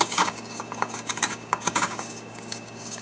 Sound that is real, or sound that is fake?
fake